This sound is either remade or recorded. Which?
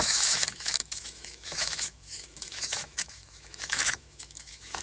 remade